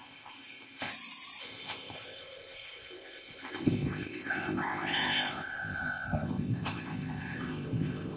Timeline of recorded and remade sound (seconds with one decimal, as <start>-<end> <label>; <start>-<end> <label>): 0.0-0.9 remade; 0.9-1.4 recorded; 1.4-8.2 remade